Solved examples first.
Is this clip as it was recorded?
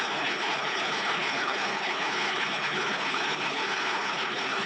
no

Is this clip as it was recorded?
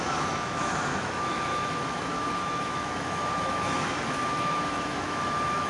no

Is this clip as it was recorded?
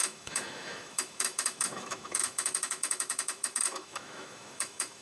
no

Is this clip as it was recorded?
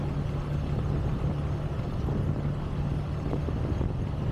yes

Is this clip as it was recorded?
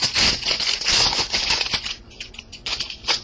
no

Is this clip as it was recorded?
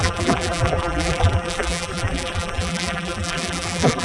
no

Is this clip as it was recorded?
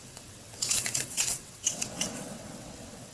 no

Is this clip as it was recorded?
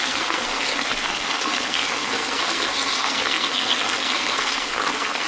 no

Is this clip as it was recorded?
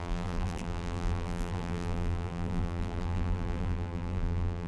no